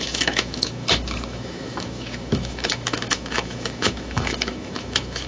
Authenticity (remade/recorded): remade